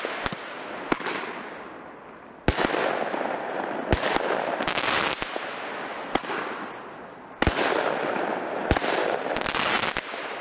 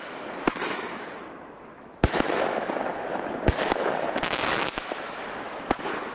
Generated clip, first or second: second